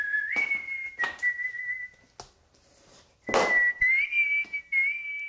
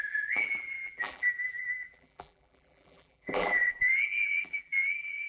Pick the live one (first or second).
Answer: first